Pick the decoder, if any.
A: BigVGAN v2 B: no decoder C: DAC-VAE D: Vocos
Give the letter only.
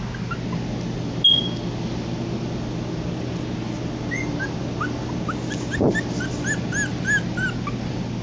B